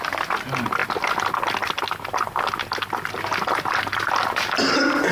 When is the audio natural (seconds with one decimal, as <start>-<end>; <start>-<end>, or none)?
0.0-5.1